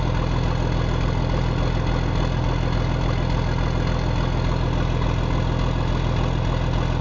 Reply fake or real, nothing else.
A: real